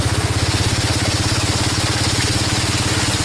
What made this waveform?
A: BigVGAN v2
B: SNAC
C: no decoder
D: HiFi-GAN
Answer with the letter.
C